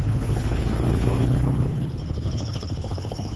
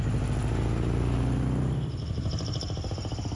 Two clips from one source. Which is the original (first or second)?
second